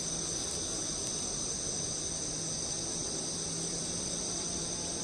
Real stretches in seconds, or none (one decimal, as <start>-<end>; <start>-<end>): 0.0-5.0